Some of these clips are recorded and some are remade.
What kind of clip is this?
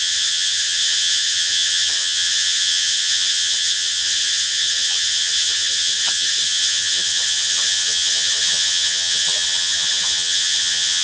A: remade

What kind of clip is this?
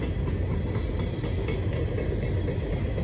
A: recorded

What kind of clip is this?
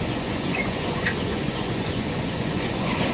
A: remade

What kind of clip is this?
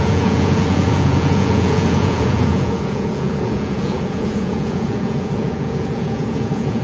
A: remade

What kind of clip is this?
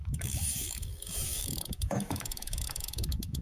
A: remade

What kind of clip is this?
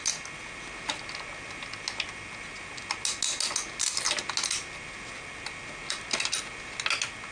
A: recorded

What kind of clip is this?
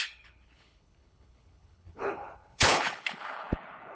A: remade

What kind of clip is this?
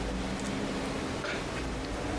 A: recorded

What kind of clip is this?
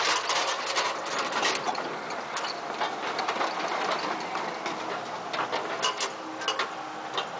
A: recorded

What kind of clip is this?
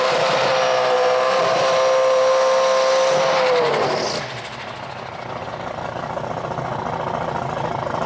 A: recorded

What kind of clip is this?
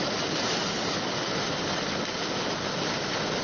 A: recorded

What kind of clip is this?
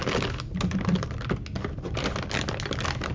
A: recorded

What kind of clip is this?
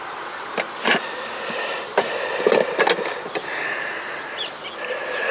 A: recorded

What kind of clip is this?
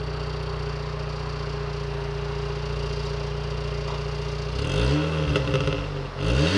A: recorded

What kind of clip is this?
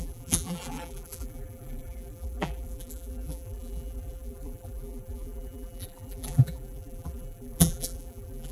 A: remade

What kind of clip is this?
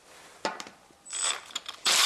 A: remade